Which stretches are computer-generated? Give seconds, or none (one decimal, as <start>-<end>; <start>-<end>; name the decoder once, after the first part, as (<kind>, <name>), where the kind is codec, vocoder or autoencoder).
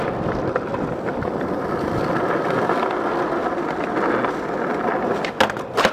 none